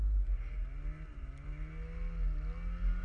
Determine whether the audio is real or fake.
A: real